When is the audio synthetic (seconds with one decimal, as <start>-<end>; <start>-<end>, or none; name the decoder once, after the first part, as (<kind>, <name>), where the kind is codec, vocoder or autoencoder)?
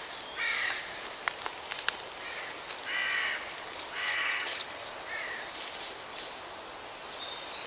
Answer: 4.0-4.8 (vocoder, HiFi-GAN)